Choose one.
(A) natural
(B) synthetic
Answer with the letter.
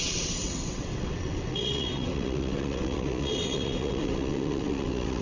B